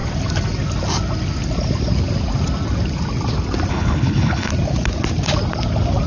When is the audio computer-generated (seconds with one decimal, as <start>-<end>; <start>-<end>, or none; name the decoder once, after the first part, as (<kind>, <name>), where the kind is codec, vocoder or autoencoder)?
3.7-4.5 (codec, HILCodec)